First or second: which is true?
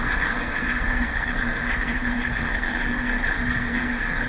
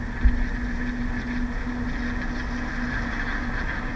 second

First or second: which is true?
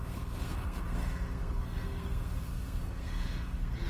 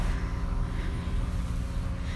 second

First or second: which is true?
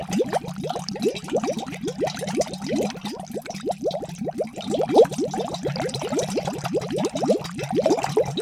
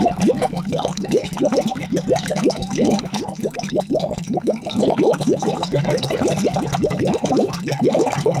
first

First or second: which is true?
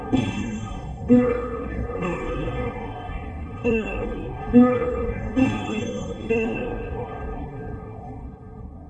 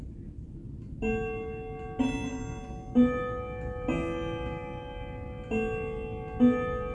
second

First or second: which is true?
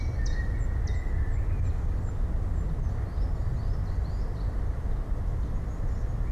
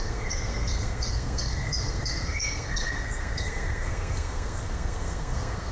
first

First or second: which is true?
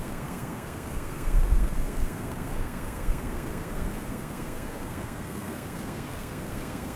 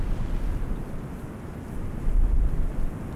second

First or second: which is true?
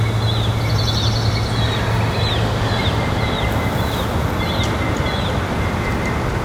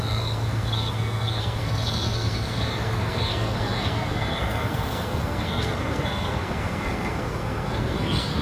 first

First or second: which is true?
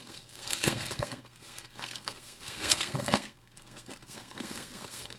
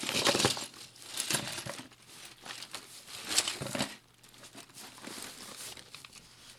second